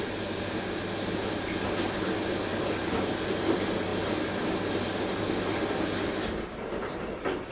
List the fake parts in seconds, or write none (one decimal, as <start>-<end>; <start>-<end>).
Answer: 2.5-3.1

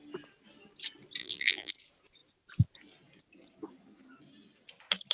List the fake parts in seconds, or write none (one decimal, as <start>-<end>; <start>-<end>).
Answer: 1.2-1.7